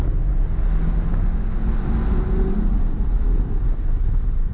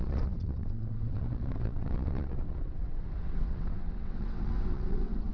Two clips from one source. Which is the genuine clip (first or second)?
first